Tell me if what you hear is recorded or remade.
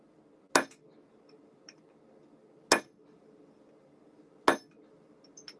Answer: recorded